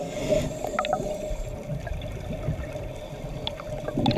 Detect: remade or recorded recorded